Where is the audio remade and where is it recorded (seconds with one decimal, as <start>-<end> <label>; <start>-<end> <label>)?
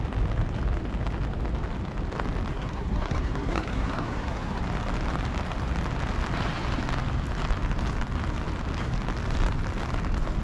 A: 0.0-2.5 recorded; 2.5-4.6 remade; 4.6-10.4 recorded